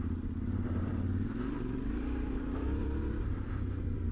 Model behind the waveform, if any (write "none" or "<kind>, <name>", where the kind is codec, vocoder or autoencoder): vocoder, BigVGAN v2